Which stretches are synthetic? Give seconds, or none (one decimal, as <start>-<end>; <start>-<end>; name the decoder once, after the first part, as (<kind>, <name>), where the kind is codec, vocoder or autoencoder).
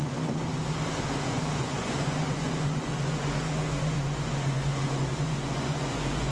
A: 0.0-0.5 (vocoder, Vocos); 1.2-6.3